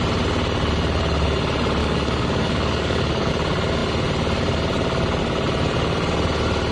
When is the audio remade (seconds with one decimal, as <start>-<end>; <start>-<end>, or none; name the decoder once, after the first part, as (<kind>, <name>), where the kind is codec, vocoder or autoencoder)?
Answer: 1.8-3.3 (codec, DAC)